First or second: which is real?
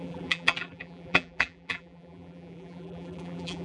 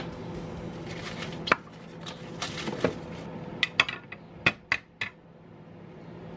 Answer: second